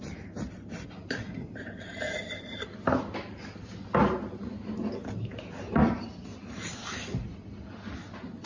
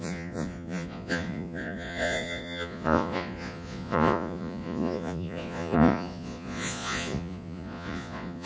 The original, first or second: first